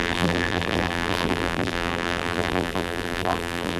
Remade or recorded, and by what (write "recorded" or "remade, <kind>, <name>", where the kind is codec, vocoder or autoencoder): remade, vocoder, BigVGAN v2